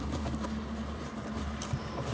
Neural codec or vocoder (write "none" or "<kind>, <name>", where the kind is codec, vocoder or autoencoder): vocoder, BigVGAN v2